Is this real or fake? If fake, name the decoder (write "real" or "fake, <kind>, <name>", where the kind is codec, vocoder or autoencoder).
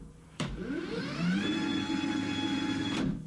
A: fake, vocoder, BigVGAN v2